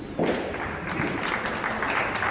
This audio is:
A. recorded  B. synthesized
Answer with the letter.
A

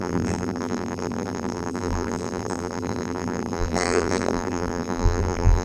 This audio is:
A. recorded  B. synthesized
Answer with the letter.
B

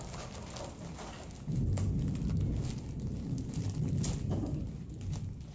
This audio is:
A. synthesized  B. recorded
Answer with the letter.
B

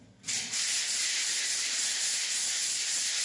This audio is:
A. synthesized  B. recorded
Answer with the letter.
B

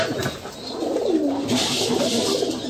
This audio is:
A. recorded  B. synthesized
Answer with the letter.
A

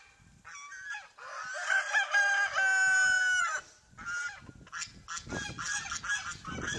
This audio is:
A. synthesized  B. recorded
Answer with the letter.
B